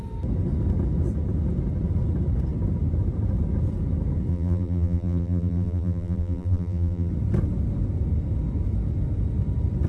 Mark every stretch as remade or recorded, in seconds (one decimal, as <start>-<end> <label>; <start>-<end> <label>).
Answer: 0.0-4.3 recorded; 4.3-7.1 remade; 7.1-9.9 recorded